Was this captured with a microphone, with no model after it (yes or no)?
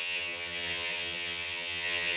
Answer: no